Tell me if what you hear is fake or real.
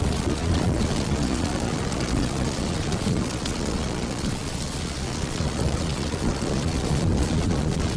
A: fake